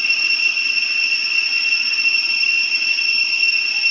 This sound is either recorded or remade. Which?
recorded